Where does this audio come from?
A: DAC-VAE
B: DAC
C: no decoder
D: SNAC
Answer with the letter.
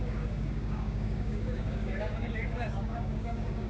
B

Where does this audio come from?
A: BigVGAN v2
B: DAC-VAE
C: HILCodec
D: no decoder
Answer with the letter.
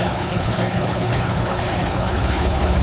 C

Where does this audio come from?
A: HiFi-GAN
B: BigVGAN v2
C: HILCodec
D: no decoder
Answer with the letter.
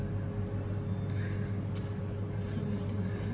D